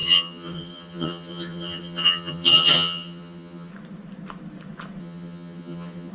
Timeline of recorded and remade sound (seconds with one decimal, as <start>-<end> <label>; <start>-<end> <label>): 0.0-3.7 remade; 3.7-5.0 recorded; 5.0-6.1 remade